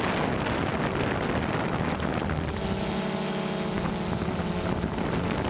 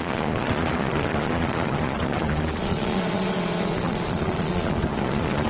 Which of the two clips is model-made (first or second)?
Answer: second